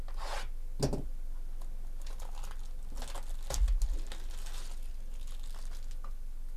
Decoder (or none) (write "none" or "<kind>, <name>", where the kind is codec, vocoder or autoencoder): none